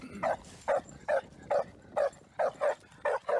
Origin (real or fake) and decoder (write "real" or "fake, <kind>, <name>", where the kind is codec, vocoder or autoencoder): real